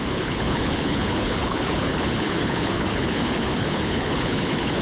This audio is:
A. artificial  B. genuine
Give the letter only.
A